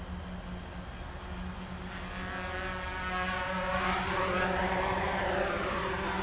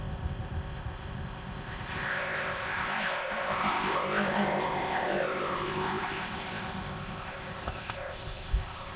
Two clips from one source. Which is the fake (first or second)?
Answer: second